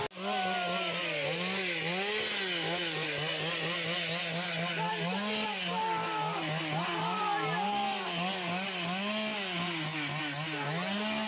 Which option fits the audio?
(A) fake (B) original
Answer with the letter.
B